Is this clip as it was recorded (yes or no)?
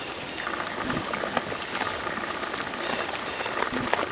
yes